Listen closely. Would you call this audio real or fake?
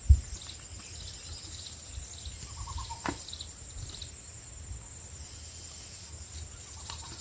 real